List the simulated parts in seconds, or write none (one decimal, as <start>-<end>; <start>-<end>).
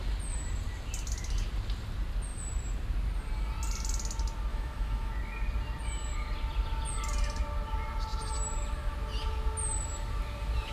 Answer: 4.5-5.1